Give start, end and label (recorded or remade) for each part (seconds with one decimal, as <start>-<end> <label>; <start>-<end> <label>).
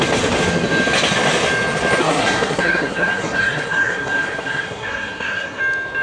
0.0-2.0 recorded; 2.0-5.6 remade; 5.6-6.0 recorded